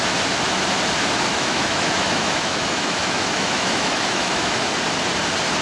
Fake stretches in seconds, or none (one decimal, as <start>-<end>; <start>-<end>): 1.3-4.7